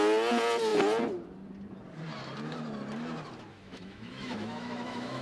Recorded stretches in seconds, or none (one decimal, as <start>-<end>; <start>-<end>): 0.0-3.5